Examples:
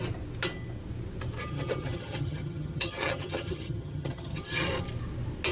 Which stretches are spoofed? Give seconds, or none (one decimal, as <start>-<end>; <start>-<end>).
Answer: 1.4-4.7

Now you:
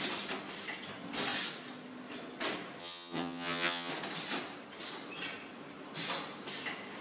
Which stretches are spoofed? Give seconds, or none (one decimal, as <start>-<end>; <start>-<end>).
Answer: 2.8-3.9

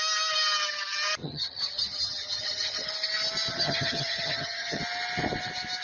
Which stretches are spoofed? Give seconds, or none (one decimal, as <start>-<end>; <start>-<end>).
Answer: 1.2-2.9; 3.5-4.8

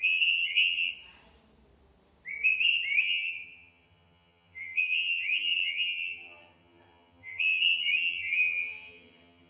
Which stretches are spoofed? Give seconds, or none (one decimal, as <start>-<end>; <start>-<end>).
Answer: 0.0-0.9; 3.0-9.5